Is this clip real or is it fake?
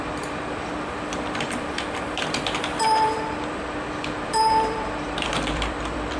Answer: fake